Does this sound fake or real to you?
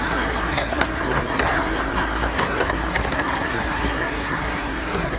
fake